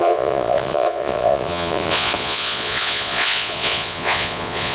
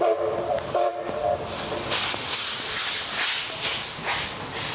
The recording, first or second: second